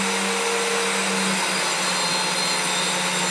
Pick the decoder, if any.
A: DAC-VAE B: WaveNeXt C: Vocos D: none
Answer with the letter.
D